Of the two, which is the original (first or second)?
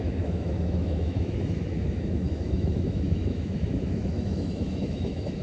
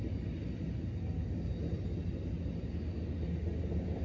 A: second